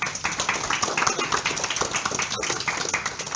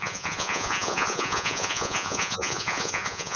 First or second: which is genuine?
first